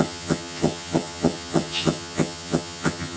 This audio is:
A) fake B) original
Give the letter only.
A